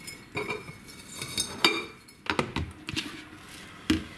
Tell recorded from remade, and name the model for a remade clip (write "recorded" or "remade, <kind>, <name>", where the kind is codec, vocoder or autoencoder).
recorded